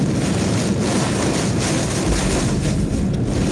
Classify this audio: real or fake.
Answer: real